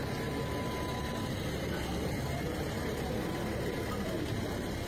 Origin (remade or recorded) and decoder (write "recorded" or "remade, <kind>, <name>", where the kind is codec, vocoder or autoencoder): recorded